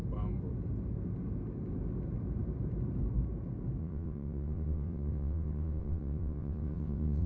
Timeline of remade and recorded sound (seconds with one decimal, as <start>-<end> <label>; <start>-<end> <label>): 0.0-3.8 recorded; 3.8-7.3 remade

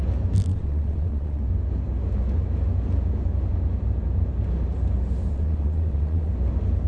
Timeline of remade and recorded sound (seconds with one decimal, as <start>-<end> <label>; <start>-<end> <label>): 0.0-0.5 recorded; 0.5-1.4 remade; 1.4-5.3 recorded; 5.3-6.3 remade; 6.3-6.9 recorded

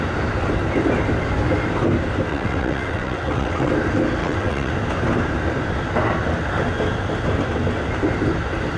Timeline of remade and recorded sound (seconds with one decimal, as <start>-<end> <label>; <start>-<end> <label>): 0.0-2.3 recorded; 2.3-3.7 remade; 3.7-4.2 recorded; 4.2-4.7 remade; 4.7-8.8 recorded

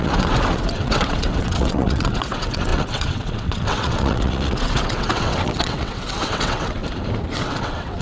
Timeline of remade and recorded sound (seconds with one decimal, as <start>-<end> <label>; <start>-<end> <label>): 0.0-6.8 remade; 6.8-7.3 recorded; 7.3-8.0 remade